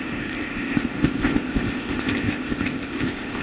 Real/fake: fake